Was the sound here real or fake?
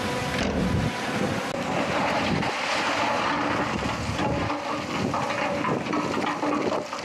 real